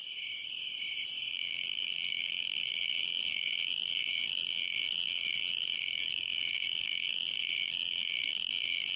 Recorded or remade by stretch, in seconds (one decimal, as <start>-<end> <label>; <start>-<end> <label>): 0.0-1.3 recorded; 1.3-9.0 remade